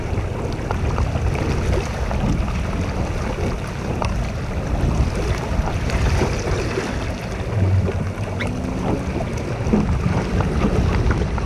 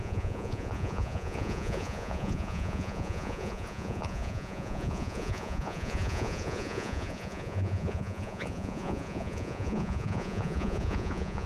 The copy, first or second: second